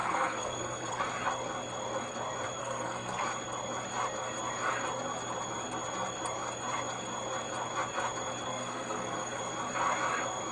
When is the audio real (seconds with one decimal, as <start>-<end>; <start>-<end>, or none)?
1.0-2.6; 3.2-8.5; 9.4-10.5